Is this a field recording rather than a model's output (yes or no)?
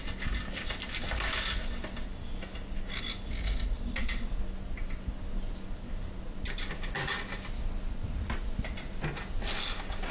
yes